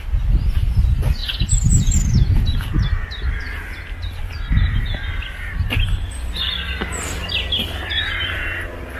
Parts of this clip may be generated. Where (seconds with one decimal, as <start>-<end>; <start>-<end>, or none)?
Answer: none

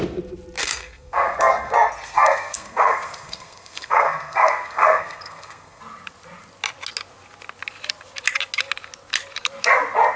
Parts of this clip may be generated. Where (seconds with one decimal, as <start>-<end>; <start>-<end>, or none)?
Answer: 0.6-5.8

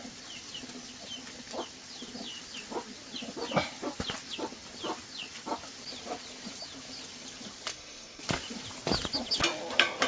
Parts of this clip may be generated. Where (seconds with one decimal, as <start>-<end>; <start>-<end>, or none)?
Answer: 7.7-8.2

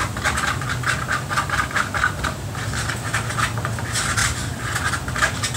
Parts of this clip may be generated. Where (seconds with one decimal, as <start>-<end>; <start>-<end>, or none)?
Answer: none

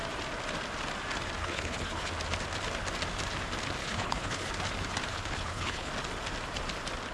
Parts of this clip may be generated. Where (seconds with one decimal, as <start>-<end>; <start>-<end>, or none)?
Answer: 1.4-2.1; 3.8-4.5; 5.1-5.9

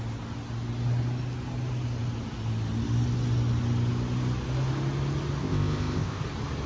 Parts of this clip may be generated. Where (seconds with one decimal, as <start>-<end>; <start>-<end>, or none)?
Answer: 5.4-6.2